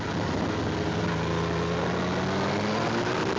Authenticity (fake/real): real